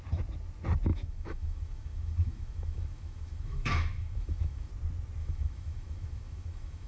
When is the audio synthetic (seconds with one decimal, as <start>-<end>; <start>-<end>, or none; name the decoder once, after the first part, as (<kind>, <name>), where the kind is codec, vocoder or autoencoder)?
0.9-4.7 (autoencoder, DAC-VAE); 5.2-6.9